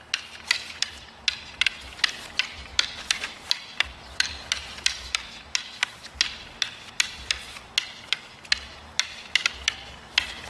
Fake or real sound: real